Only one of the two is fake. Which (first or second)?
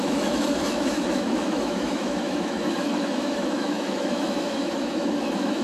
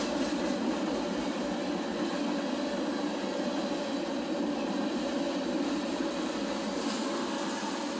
first